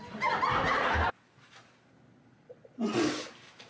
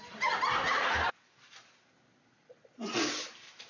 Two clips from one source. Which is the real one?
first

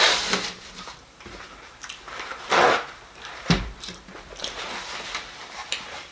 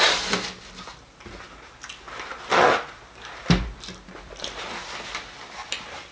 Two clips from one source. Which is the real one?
second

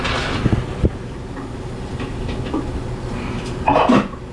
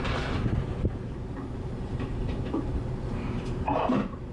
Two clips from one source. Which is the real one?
first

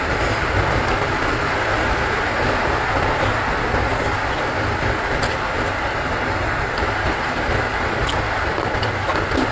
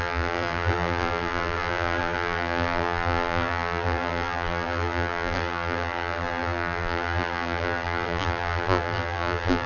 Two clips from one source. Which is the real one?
first